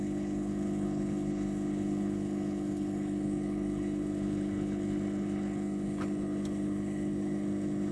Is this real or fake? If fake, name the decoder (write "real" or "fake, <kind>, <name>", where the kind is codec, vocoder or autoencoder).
fake, codec, HILCodec